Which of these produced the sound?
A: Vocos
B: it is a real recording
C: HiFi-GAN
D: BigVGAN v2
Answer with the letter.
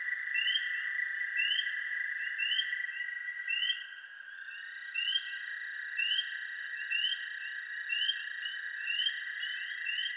B